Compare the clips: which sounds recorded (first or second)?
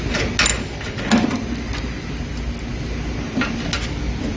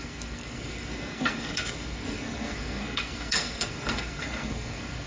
first